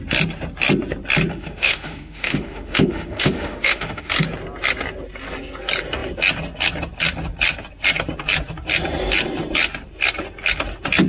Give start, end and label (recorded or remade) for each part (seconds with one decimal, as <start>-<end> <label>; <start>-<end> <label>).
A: 0.0-1.3 recorded; 1.3-4.1 remade; 4.1-11.1 recorded